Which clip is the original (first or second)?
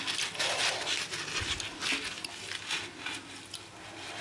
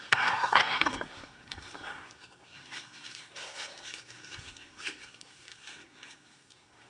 first